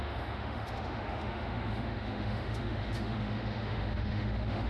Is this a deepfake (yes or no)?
yes